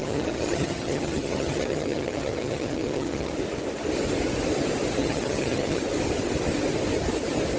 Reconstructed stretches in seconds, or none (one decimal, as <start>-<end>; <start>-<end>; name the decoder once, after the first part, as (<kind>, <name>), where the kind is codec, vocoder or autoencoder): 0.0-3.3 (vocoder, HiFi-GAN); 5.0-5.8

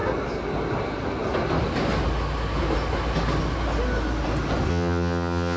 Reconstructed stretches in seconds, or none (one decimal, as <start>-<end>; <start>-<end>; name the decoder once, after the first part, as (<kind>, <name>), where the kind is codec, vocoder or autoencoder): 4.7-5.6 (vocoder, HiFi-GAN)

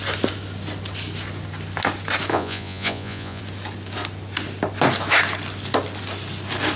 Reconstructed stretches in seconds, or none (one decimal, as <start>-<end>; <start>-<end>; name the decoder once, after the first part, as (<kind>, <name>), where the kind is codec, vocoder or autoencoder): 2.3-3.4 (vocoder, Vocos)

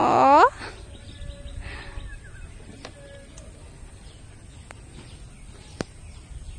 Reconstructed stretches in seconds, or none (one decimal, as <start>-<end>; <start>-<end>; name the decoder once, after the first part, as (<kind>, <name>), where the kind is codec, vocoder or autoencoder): none

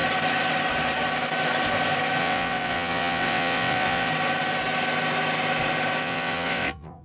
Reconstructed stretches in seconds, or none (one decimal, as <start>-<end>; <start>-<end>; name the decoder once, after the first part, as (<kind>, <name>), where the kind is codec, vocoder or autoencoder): 2.2-4.1 (vocoder, WaveNeXt); 6.0-7.0